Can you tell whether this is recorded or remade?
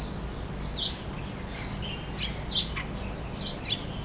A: recorded